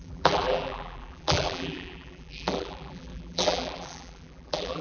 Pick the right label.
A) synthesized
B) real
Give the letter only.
A